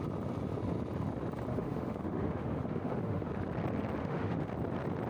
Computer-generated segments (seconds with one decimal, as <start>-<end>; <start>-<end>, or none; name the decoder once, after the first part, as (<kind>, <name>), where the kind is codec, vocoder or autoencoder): 1.5-3.3 (autoencoder, DAC-VAE); 4.0-4.5